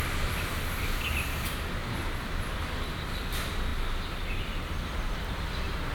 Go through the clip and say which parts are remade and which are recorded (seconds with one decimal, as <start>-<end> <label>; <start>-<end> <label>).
0.0-1.8 remade; 1.8-2.4 recorded; 2.4-3.7 remade; 3.7-4.4 recorded; 4.4-5.9 remade